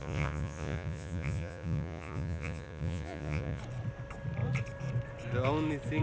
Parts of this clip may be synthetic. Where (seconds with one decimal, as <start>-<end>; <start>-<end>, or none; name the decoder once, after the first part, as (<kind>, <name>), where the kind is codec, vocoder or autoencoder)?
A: 0.0-3.6 (vocoder, Vocos)